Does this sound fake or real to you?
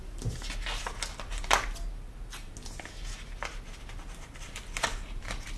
real